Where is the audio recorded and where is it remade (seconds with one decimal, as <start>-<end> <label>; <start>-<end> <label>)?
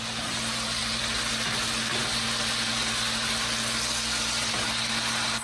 0.0-5.4 recorded